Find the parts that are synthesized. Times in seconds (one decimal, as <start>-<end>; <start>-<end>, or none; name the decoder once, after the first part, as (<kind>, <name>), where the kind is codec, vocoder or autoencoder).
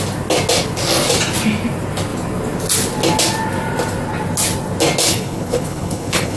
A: 5.1-6.4 (codec, HILCodec)